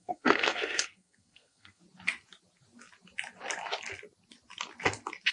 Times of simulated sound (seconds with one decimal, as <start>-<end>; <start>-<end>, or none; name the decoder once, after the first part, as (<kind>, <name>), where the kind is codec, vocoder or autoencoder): 0.0-1.8 (codec, SNAC)